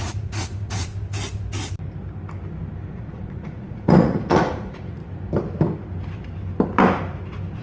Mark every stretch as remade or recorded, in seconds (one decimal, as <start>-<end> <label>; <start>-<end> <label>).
0.0-0.9 remade; 0.9-2.9 recorded; 2.9-5.0 remade; 5.0-7.6 recorded